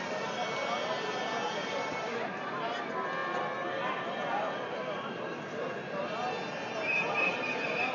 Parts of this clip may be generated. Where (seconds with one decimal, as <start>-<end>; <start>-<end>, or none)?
none